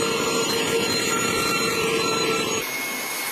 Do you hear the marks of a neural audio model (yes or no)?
no